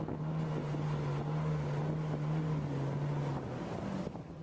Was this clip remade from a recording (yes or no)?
no